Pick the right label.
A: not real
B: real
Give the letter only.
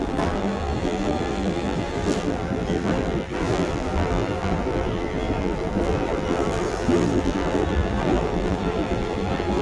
A